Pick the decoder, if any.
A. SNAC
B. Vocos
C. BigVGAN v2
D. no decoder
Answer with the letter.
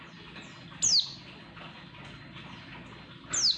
D